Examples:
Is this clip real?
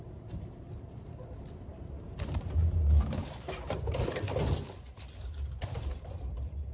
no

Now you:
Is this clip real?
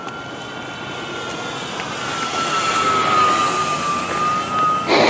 yes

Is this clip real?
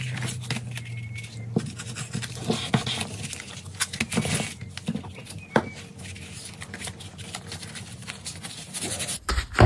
yes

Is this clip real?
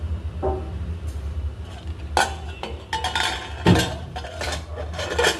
yes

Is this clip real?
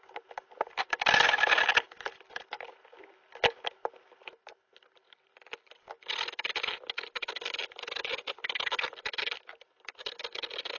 yes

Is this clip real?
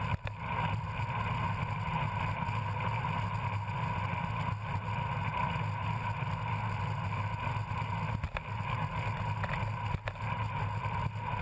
yes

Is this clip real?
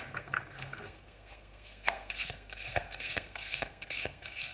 no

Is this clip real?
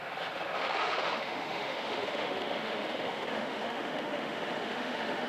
no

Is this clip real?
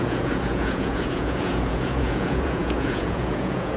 no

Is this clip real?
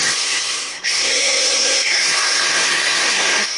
no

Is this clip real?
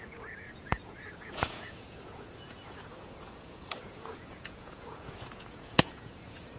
no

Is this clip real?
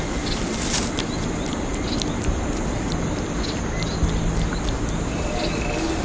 yes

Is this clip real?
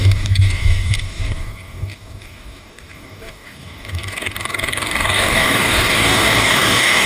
no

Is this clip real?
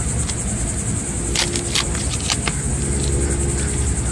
yes